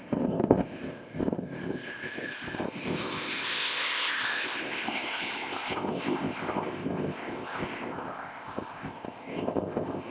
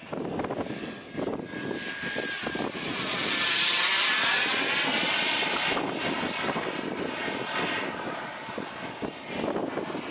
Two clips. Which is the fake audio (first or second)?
first